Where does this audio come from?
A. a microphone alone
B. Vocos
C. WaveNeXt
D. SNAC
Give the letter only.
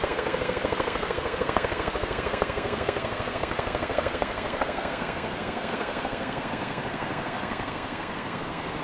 D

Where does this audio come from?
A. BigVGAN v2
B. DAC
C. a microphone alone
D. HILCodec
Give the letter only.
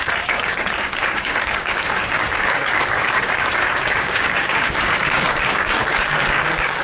B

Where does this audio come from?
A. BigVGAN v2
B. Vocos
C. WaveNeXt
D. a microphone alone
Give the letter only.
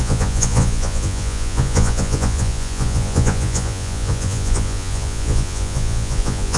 B